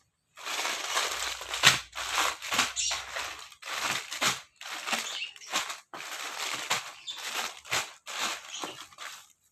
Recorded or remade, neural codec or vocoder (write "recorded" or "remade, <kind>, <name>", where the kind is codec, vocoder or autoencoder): recorded